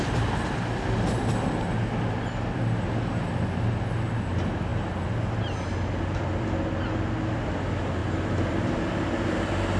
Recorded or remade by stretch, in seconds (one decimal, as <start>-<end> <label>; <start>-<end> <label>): 0.0-8.0 recorded; 8.0-8.9 remade; 8.9-9.8 recorded